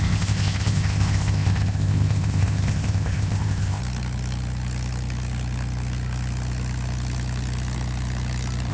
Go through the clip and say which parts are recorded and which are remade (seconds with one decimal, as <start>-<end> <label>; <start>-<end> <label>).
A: 0.0-3.8 remade; 3.8-8.7 recorded